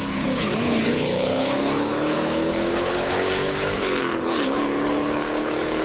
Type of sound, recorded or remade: remade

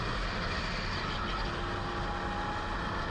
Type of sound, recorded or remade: recorded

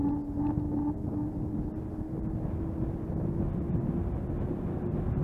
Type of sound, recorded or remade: recorded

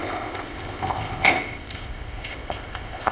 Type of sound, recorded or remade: remade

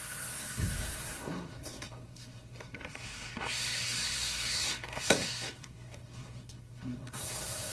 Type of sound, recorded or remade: remade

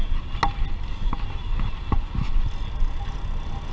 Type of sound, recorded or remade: recorded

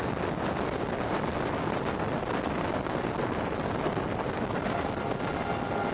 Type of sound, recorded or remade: recorded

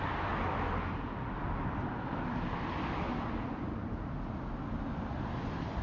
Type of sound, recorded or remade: recorded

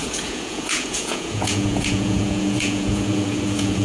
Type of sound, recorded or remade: remade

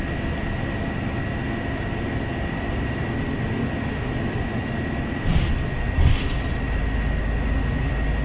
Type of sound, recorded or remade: recorded